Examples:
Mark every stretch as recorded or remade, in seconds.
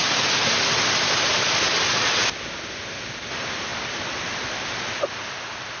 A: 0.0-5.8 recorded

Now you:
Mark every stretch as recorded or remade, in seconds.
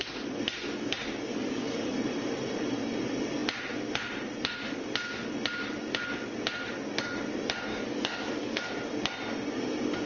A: 0.0-1.3 recorded; 1.3-1.9 remade; 1.9-7.7 recorded; 7.7-8.7 remade; 8.7-10.1 recorded